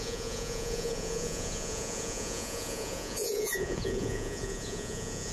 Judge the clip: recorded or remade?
remade